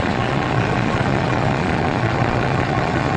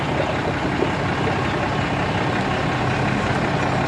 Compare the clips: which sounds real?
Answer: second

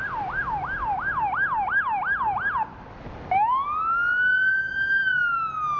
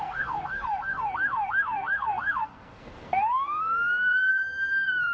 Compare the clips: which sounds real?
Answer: first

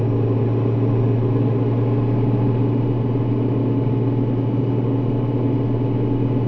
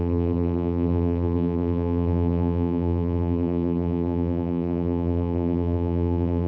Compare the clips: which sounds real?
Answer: first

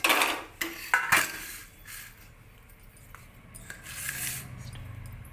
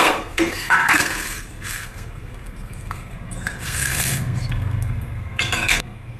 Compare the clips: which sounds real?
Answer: first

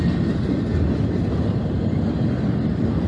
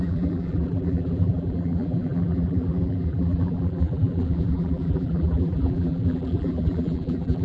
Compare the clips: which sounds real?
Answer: first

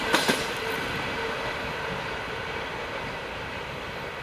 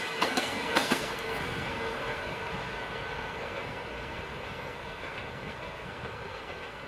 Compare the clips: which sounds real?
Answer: first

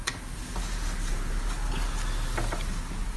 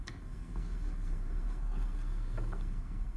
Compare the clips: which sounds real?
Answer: first